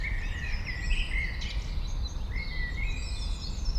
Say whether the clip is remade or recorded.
recorded